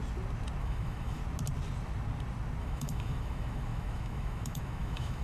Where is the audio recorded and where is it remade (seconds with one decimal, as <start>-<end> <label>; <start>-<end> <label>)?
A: 0.0-0.6 recorded; 0.6-1.2 remade; 1.2-2.6 recorded; 2.6-5.2 remade

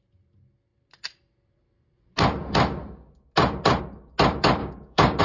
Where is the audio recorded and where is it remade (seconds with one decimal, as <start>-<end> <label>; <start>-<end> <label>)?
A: 0.0-4.6 recorded; 4.6-5.2 remade

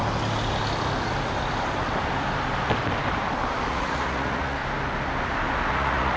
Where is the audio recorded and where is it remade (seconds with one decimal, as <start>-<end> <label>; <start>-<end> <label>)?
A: 0.0-3.7 recorded; 3.7-4.6 remade; 4.6-5.7 recorded; 5.7-6.2 remade

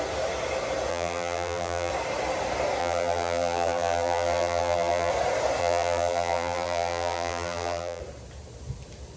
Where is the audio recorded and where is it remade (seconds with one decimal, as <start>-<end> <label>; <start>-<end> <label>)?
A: 0.0-0.9 recorded; 0.9-1.9 remade; 1.9-2.8 recorded; 2.8-5.1 remade; 5.1-5.6 recorded; 5.6-8.0 remade; 8.0-9.2 recorded

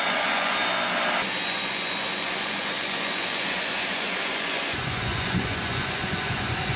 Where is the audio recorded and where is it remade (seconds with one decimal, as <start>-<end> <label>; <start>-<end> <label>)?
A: 0.0-0.6 remade; 0.6-1.4 recorded; 1.4-6.8 remade